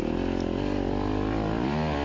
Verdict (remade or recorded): recorded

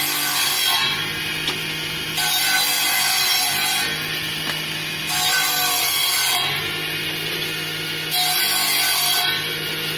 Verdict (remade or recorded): recorded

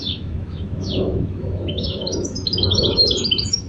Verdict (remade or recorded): remade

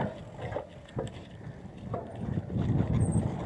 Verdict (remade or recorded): recorded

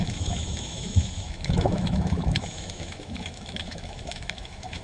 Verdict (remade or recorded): remade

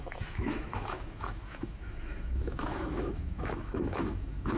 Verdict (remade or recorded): remade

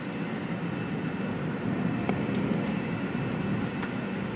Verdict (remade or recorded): recorded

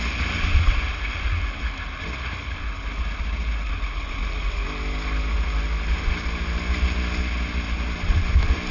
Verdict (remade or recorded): recorded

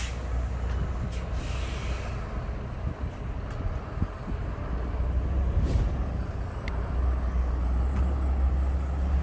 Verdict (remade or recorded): recorded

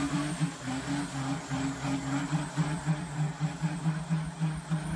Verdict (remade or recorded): recorded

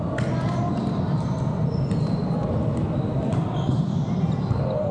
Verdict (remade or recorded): recorded